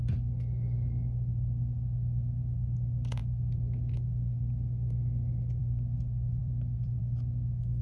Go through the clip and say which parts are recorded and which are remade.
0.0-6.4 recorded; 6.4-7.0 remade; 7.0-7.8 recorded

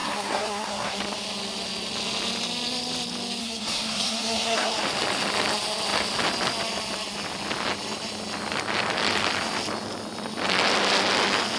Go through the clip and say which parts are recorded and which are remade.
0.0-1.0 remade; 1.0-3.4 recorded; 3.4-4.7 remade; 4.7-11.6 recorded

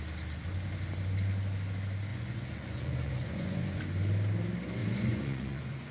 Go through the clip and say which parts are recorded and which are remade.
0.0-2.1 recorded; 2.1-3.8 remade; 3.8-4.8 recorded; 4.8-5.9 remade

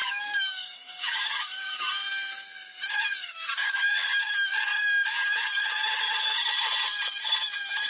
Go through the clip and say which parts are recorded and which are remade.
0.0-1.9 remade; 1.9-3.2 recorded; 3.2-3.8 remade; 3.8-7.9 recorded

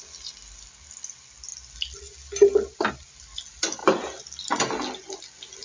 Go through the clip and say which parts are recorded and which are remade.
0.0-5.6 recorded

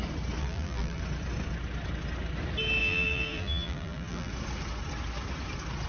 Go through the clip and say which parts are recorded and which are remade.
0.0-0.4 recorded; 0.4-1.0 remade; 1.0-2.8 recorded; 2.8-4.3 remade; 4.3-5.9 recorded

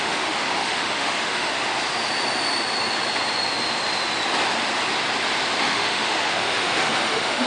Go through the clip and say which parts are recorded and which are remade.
0.0-1.5 remade; 1.5-5.6 recorded; 5.6-7.5 remade

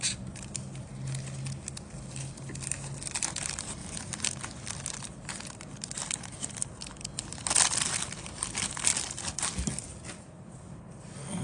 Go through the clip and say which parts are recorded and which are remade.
0.0-3.8 recorded; 3.8-4.4 remade; 4.4-11.4 recorded